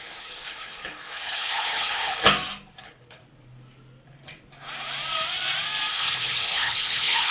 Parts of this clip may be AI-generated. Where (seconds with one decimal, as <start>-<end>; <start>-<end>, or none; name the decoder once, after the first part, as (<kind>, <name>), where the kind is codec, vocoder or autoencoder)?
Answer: 0.0-2.2 (codec, HILCodec); 2.8-3.2; 5.9-7.3